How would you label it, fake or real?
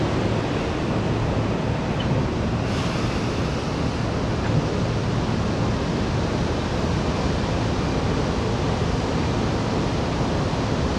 real